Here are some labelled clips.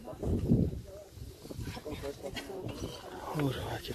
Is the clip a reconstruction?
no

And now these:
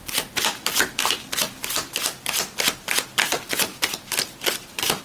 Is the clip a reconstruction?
no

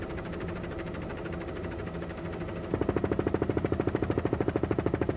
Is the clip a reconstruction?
no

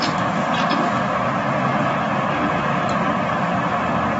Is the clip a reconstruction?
no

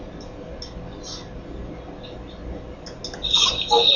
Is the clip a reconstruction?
no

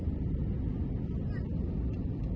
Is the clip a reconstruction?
no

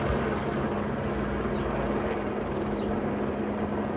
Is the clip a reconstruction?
no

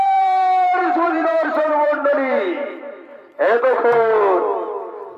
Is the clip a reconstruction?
yes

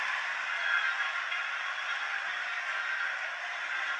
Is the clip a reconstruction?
no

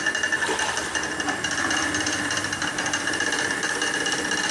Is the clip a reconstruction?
no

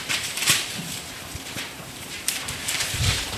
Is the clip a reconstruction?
yes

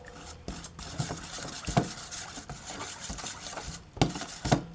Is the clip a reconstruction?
no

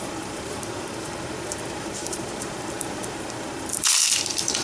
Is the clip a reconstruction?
yes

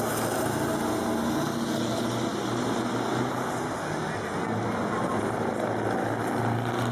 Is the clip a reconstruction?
no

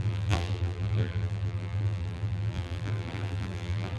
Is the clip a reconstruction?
yes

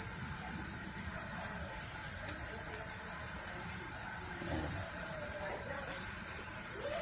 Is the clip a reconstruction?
yes